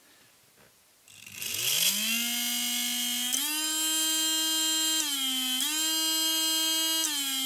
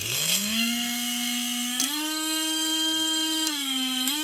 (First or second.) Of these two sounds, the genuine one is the first